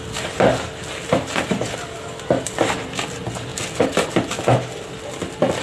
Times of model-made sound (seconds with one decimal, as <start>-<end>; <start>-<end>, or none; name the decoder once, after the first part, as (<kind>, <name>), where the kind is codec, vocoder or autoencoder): 3.5-4.2 (vocoder, BigVGAN v2)